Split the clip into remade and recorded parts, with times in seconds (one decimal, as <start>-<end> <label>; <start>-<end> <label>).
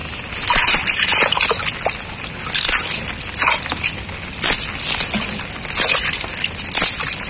0.0-7.3 recorded